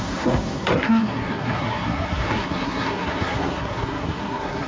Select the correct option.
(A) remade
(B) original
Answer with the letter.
A